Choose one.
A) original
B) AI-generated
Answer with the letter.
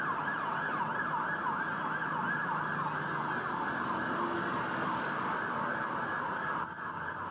A